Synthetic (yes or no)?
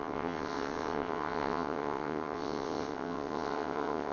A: yes